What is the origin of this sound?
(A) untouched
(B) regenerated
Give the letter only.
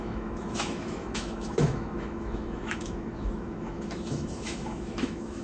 B